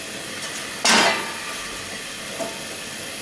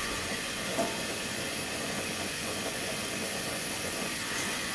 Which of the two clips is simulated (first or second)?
second